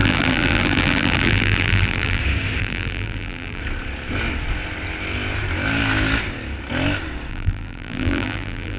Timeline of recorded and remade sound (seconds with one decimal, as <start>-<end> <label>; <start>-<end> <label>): 0.0-2.2 remade; 2.2-2.6 recorded; 2.6-3.6 remade; 3.6-7.3 recorded; 7.3-8.8 remade